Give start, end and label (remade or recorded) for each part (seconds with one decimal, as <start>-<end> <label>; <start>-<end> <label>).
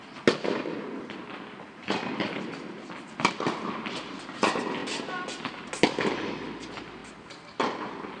0.0-4.8 recorded; 4.8-5.5 remade; 5.5-7.0 recorded; 7.0-7.5 remade; 7.5-8.2 recorded